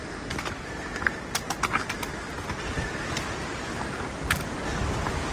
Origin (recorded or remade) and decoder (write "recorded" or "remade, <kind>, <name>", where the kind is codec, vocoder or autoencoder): recorded